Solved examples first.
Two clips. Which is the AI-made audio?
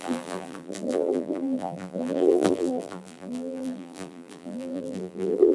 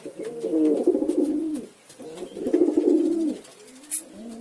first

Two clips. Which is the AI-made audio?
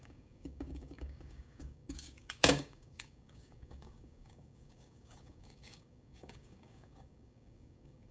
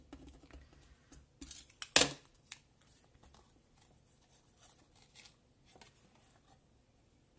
first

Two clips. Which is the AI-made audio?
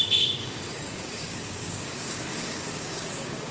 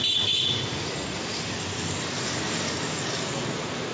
first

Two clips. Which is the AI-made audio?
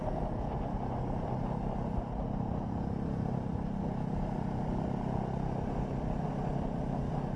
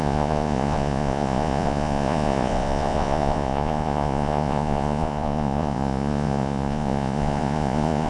second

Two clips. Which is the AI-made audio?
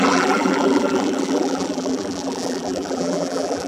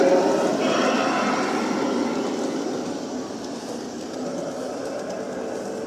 first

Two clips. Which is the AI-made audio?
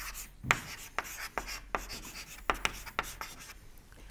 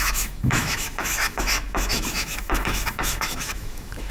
second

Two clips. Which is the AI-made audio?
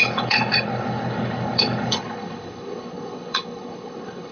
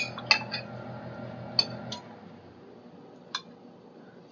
first